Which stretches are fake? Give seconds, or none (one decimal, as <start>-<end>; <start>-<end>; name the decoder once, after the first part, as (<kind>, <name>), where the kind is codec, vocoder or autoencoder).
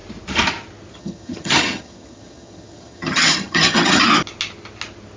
0.9-4.0 (vocoder, HiFi-GAN)